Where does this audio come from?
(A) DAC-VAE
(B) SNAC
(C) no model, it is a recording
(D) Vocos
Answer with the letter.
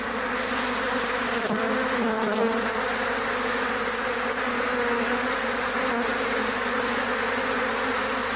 C